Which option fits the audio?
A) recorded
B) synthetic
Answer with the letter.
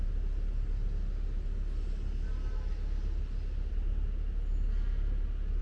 A